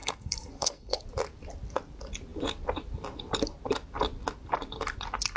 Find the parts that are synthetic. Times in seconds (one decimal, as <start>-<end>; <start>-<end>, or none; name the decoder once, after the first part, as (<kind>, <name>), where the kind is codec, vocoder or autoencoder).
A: 0.0-1.0 (codec, SNAC)